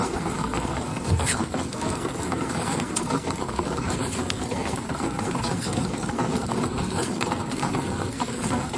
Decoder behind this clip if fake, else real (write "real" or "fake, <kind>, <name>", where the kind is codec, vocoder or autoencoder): fake, codec, SNAC